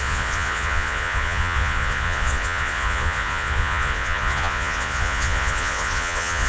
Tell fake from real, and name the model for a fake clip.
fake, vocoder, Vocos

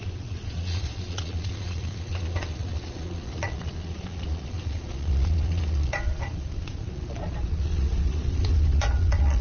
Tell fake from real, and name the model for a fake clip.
fake, vocoder, Vocos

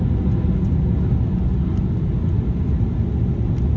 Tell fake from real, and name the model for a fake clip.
real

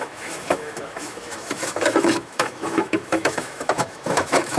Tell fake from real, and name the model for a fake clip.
fake, autoencoder, DAC-VAE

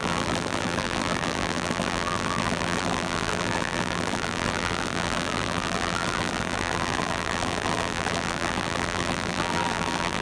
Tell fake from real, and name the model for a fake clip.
fake, vocoder, BigVGAN v2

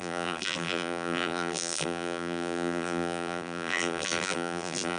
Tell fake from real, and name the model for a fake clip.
fake, vocoder, BigVGAN v2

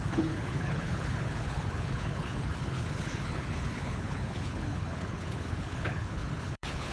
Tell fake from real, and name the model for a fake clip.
fake, codec, HILCodec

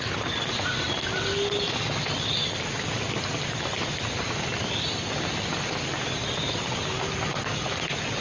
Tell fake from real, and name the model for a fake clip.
real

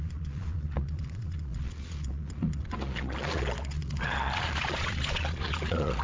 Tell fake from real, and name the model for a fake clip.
fake, vocoder, Vocos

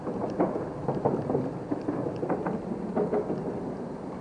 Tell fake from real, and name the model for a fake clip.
real